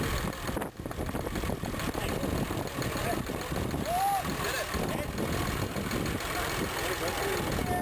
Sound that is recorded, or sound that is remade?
recorded